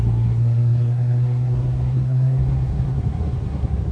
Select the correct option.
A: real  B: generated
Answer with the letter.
B